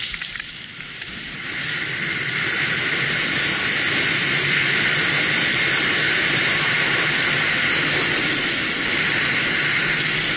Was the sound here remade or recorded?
recorded